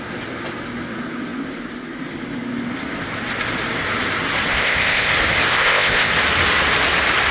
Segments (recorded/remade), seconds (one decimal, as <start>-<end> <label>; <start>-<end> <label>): 0.0-4.5 recorded; 4.5-5.1 remade; 5.1-5.5 recorded; 5.5-6.1 remade; 6.1-7.3 recorded